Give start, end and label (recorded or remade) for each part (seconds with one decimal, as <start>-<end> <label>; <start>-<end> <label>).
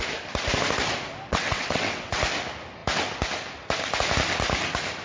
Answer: 0.0-1.3 recorded; 1.3-2.2 remade; 2.2-5.0 recorded